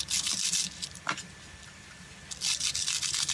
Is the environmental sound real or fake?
real